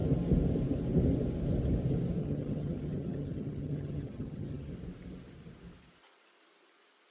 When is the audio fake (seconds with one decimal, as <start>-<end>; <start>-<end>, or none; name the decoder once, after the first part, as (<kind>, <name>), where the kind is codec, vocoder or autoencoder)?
2.2-4.7 (vocoder, HiFi-GAN)